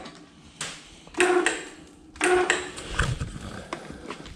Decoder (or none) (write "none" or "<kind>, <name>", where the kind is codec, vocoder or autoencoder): none